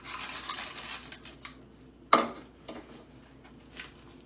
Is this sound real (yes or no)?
yes